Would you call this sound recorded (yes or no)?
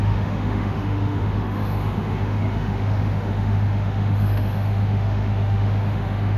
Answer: no